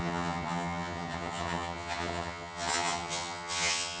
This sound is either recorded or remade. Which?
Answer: remade